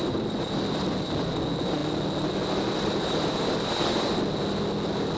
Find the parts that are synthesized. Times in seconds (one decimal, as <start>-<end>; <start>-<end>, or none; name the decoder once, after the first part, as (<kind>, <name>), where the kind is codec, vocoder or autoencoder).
none